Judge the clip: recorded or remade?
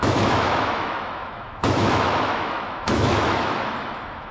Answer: remade